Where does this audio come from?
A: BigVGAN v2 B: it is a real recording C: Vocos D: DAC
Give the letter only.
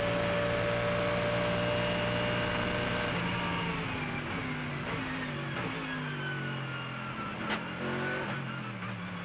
B